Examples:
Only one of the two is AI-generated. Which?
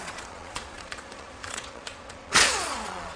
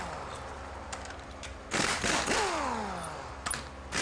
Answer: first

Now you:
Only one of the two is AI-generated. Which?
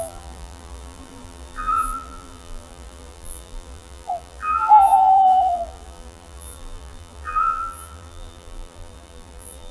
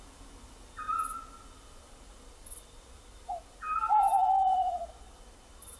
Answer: first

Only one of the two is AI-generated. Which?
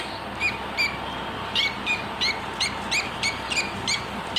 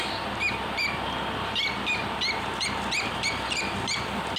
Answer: second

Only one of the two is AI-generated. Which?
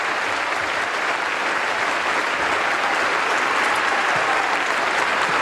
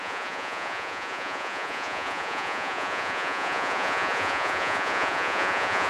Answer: second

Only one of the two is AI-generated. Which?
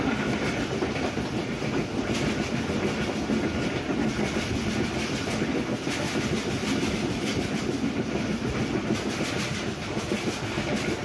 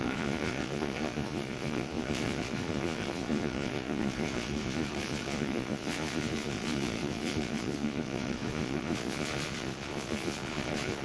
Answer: second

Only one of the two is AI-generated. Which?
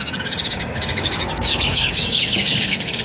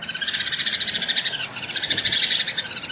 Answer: first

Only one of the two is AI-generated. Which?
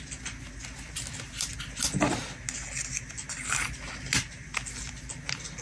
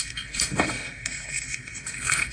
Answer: second